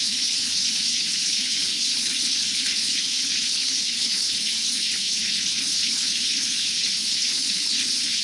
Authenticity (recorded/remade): remade